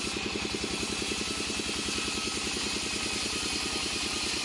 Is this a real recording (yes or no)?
yes